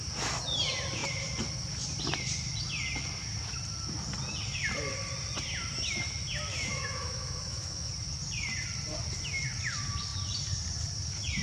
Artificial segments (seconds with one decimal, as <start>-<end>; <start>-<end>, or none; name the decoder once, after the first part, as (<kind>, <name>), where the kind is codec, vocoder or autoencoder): 6.7-7.9 (autoencoder, DAC-VAE)